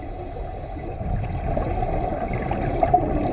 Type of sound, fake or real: real